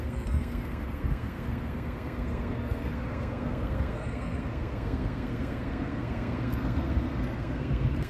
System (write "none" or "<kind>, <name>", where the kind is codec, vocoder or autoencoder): codec, SNAC